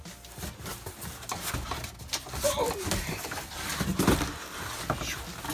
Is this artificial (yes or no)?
no